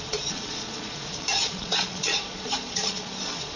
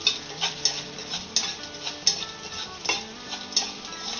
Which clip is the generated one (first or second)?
first